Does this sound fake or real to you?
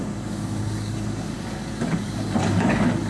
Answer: fake